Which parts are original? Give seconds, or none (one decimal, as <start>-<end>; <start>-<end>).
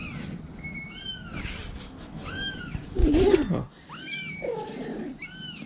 0.0-1.8; 3.0-4.3; 4.9-5.7